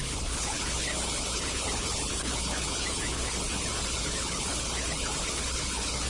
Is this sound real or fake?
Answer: fake